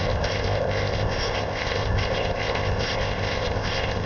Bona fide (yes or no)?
no